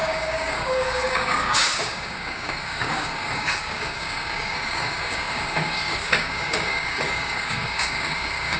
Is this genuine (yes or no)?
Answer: no